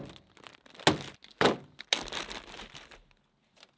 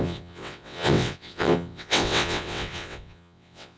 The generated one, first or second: second